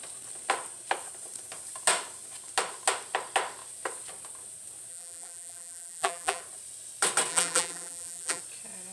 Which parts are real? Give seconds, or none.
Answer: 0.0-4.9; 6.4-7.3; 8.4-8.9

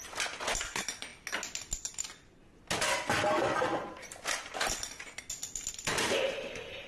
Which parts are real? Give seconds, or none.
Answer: 0.0-6.9

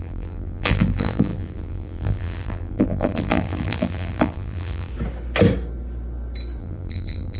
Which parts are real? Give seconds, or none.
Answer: 4.9-6.6

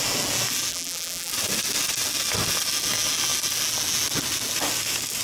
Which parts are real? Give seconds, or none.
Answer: 0.0-0.7; 1.3-5.2

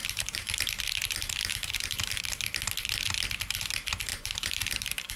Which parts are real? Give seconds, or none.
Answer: 0.5-1.4; 2.2-4.1

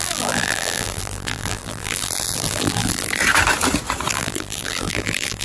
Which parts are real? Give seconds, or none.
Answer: 3.2-4.1